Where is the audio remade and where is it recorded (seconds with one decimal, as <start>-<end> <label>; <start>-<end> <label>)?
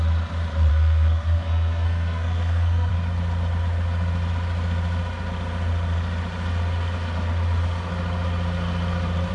0.0-0.7 recorded; 0.7-2.9 remade; 2.9-9.3 recorded